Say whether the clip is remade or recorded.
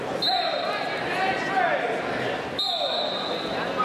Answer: recorded